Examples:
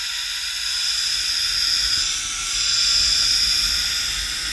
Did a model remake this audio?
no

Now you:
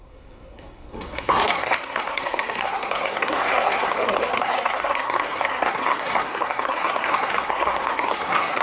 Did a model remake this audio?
yes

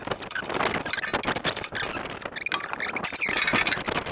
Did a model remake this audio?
no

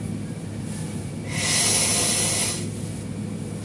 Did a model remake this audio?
no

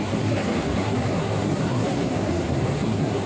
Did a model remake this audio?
yes